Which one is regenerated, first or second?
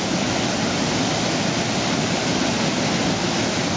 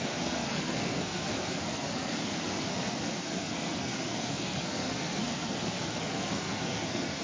second